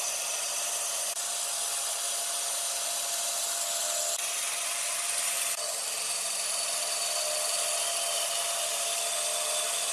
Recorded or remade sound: recorded